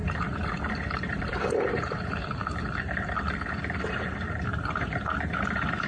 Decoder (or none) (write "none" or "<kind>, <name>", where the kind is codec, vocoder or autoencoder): vocoder, BigVGAN v2